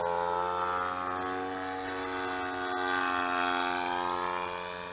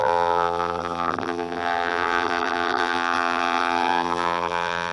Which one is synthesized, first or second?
second